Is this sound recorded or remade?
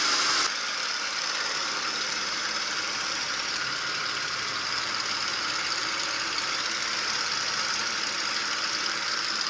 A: remade